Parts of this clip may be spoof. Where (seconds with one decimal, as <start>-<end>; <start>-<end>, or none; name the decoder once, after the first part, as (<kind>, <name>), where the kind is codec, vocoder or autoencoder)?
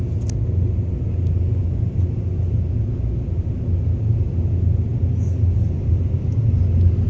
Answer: none